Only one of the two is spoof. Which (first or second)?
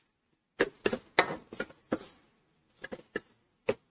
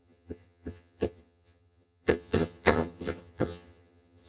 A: second